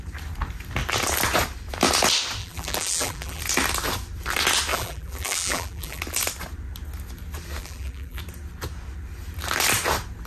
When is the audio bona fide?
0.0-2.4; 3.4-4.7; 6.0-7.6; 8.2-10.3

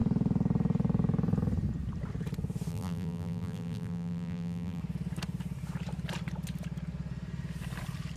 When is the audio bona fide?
0.0-2.7; 4.8-8.2

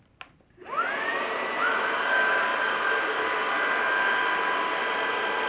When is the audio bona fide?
0.0-1.1; 2.0-2.5; 3.8-5.5